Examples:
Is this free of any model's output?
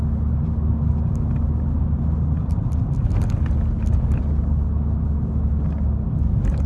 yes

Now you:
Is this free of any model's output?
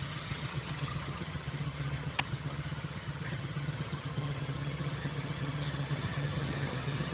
no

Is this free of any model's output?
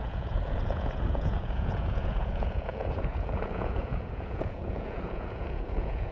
no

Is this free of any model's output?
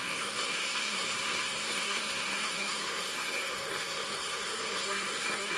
no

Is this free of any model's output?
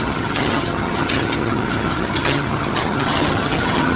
no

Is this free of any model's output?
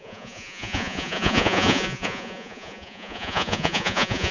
no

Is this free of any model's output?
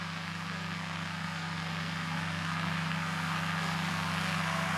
no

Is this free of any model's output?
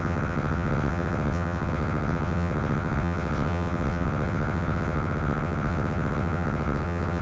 no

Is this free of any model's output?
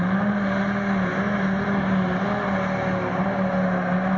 yes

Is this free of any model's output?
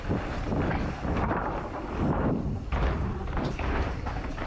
no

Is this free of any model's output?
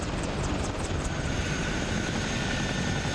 no